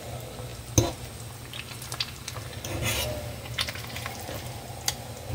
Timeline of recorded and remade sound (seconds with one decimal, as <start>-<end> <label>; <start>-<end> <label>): 0.0-5.3 recorded